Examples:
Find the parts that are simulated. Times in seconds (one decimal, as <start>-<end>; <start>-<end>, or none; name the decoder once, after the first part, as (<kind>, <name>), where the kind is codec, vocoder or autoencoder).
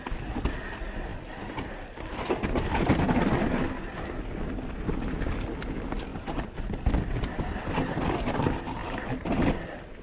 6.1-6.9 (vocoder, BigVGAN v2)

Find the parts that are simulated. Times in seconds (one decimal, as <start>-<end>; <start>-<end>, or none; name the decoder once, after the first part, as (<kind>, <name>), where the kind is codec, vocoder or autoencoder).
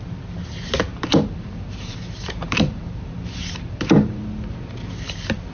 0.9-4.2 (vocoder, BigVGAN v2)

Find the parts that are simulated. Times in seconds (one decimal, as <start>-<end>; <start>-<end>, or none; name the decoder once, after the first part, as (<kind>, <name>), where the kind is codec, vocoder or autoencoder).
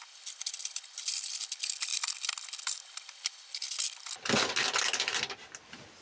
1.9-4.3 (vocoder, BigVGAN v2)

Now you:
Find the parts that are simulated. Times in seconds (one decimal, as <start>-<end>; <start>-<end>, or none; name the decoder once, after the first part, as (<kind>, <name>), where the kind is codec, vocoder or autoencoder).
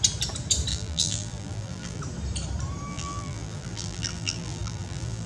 0.7-2.0 (vocoder, BigVGAN v2); 2.9-5.3